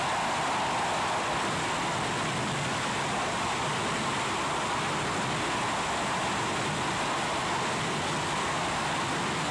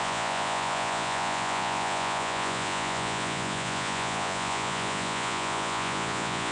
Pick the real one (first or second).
first